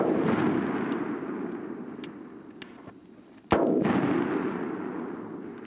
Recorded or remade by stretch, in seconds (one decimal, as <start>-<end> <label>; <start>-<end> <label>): 0.0-4.4 recorded; 4.4-5.1 remade; 5.1-5.7 recorded